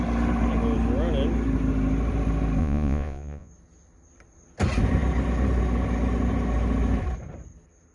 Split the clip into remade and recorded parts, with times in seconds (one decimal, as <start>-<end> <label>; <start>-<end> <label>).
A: 0.0-2.6 recorded; 2.6-3.5 remade; 3.5-7.9 recorded